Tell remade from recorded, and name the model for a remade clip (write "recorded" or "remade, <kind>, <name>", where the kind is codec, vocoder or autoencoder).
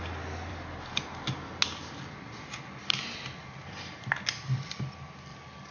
recorded